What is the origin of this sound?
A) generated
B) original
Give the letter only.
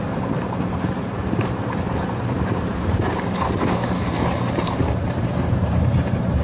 A